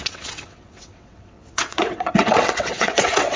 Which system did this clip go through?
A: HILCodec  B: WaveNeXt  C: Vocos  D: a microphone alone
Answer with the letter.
B